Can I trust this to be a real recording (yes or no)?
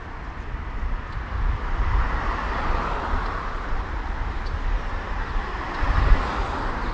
yes